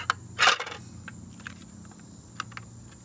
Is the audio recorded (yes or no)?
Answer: yes